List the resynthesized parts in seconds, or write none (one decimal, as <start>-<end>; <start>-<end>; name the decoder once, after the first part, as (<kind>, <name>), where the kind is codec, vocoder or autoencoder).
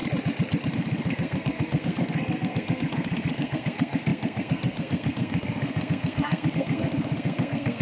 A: 0.7-7.8 (codec, SNAC)